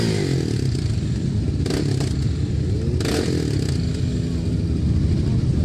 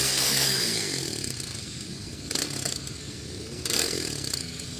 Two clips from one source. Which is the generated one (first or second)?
second